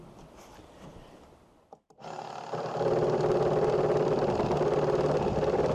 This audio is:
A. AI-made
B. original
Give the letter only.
B